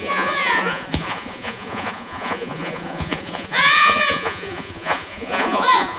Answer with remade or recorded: remade